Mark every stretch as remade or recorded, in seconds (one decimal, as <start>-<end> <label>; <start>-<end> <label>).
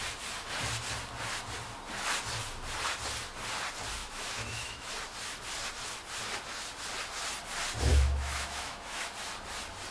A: 0.0-4.0 recorded; 4.0-4.9 remade; 4.9-7.9 recorded; 7.9-9.0 remade; 9.0-9.9 recorded